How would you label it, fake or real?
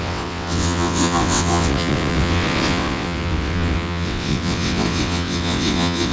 fake